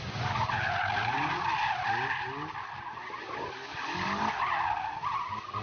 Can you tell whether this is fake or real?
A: real